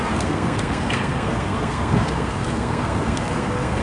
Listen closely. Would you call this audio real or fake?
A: fake